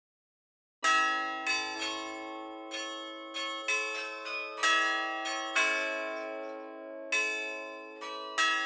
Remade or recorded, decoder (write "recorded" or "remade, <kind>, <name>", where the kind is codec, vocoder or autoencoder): recorded